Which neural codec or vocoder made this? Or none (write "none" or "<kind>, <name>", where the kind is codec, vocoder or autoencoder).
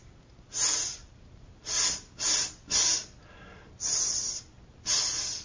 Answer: none